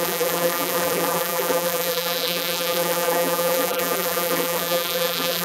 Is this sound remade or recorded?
remade